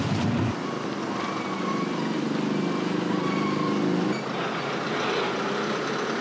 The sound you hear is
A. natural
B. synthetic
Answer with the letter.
A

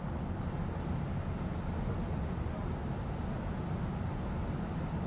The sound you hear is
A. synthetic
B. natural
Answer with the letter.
B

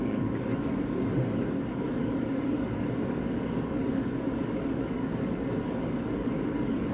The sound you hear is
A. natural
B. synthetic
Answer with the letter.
B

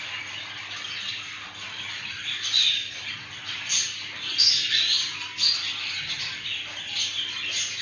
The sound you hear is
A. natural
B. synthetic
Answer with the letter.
A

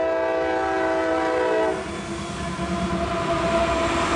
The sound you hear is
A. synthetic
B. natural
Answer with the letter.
B